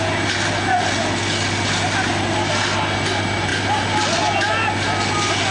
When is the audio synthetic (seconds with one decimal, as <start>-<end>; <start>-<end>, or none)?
none

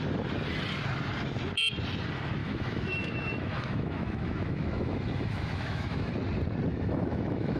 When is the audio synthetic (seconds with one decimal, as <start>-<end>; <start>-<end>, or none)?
2.4-6.1; 6.7-7.6

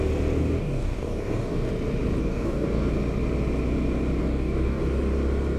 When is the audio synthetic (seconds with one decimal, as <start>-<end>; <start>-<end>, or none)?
0.4-1.7; 2.2-2.9; 4.2-4.8

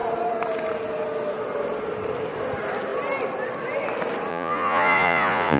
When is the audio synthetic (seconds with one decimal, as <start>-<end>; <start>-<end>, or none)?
4.3-5.6

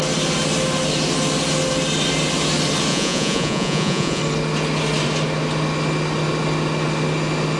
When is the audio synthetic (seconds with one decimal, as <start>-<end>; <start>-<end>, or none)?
2.9-4.2

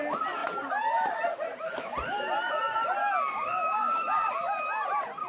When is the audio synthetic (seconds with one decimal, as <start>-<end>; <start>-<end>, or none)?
3.0-4.3

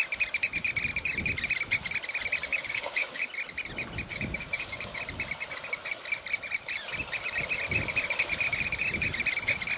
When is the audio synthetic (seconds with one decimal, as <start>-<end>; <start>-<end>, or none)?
2.5-3.3; 4.1-5.0